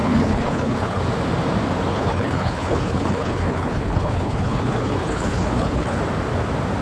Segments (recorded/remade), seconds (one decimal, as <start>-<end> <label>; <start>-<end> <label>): 0.0-1.0 remade; 1.0-1.9 recorded; 1.9-6.0 remade; 6.0-6.8 recorded